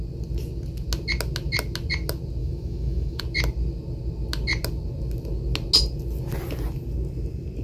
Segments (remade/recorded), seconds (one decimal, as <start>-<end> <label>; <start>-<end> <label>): 0.0-2.4 recorded; 2.4-3.2 remade; 3.2-7.6 recorded

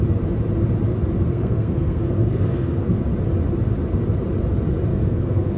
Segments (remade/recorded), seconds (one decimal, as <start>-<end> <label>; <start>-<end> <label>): 0.0-1.3 recorded; 1.3-3.0 remade; 3.0-4.9 recorded; 4.9-5.6 remade

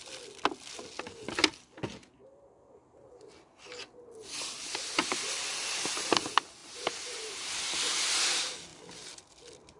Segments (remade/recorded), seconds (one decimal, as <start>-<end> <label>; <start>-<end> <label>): 0.0-6.6 recorded; 6.6-7.5 remade; 7.5-9.8 recorded

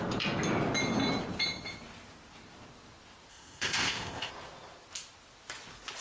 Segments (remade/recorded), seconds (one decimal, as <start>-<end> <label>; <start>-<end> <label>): 0.0-3.3 recorded; 3.3-4.3 remade; 4.3-6.0 recorded

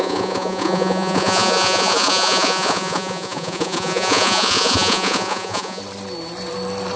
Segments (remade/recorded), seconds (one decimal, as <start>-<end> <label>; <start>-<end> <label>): 0.0-5.8 remade; 5.8-7.0 recorded

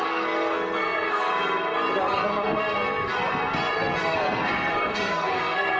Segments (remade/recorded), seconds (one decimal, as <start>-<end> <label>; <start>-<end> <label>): 0.0-1.3 remade; 1.3-2.0 recorded; 2.0-3.1 remade; 3.1-4.0 recorded; 4.0-5.8 remade